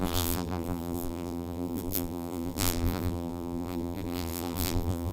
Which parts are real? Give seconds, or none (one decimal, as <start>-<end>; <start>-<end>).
none